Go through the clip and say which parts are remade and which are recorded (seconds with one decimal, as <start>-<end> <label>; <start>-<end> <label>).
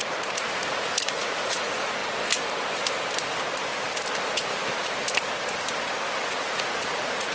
0.0-2.0 remade; 2.0-4.3 recorded; 4.3-4.7 remade; 4.7-6.4 recorded; 6.4-7.3 remade